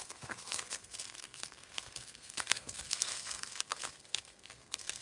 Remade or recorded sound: remade